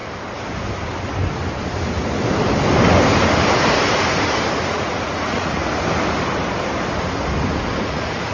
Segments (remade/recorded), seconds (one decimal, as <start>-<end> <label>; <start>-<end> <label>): 0.0-4.6 recorded; 4.6-5.6 remade; 5.6-7.8 recorded; 7.8-8.3 remade